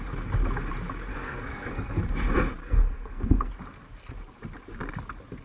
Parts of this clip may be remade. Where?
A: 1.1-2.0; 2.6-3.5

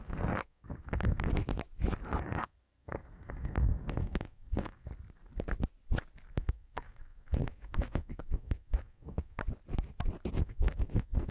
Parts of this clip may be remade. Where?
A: 0.0-1.2; 2.2-4.9; 6.3-9.4; 10.3-11.3

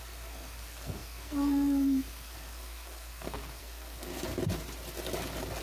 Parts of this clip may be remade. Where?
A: 0.0-4.3

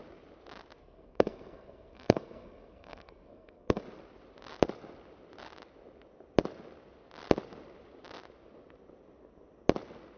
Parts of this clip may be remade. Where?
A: 0.8-3.8

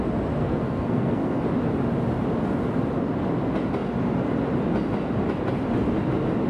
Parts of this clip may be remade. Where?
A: 0.4-1.4

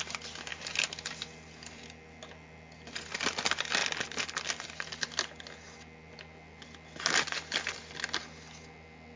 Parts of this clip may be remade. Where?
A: none

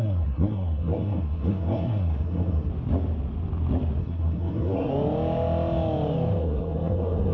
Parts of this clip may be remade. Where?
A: 0.0-2.7; 4.0-4.9; 6.4-7.3